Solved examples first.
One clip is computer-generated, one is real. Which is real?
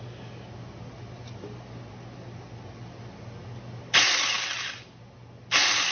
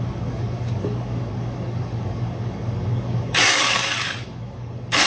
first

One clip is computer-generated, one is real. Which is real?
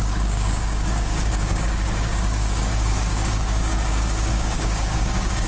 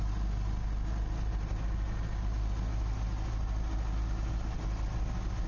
second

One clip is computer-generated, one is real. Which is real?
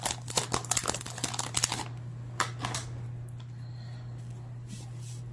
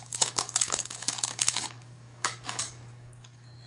first